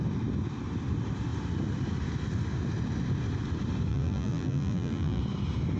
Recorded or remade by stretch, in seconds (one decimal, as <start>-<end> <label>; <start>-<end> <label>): 0.0-3.9 recorded; 3.9-5.2 remade; 5.2-5.8 recorded